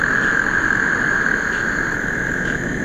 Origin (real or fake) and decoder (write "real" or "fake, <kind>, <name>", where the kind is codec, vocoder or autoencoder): fake, autoencoder, DAC-VAE